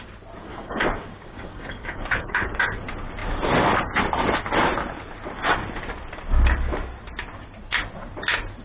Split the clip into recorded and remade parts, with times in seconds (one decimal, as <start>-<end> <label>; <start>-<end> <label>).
0.0-0.5 recorded; 0.5-2.6 remade; 2.6-8.6 recorded